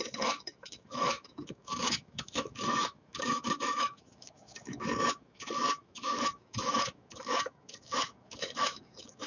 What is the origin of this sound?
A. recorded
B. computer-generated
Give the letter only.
B